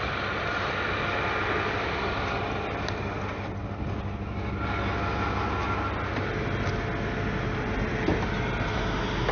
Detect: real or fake real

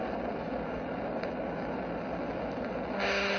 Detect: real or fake real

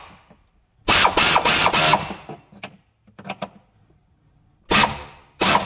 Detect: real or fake real